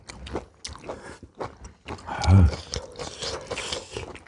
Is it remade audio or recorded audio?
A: recorded